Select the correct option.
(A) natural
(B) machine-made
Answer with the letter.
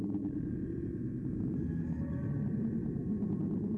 A